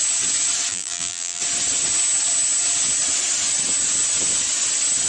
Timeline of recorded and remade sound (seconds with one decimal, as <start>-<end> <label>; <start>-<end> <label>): 0.0-0.7 recorded; 0.7-1.4 remade; 1.4-5.1 recorded